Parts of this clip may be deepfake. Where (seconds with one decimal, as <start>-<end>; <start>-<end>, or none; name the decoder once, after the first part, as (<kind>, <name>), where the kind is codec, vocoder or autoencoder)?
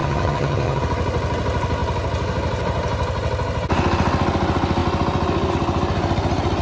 0.0-0.8 (vocoder, HiFi-GAN)